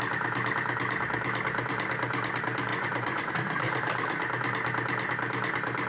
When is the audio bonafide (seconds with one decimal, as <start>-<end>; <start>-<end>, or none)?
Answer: 0.0-2.7; 3.3-5.9